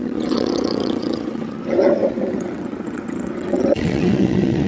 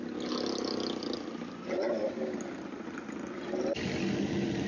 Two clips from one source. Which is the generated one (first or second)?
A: first